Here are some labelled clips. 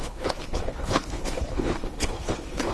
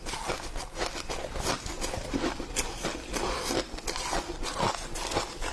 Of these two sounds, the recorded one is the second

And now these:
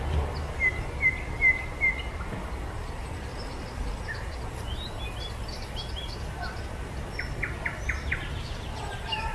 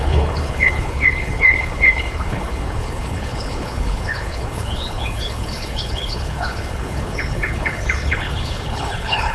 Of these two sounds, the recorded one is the first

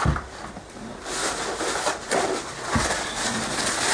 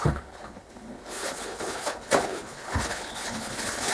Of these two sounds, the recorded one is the first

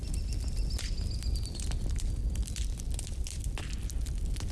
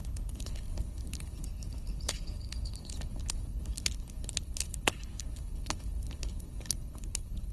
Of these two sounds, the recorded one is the first